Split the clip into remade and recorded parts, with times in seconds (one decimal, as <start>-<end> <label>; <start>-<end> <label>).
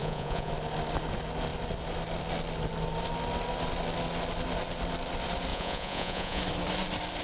0.0-0.5 remade; 0.5-5.5 recorded; 5.5-6.4 remade; 6.4-7.2 recorded